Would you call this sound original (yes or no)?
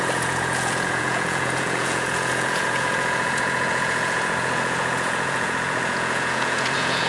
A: no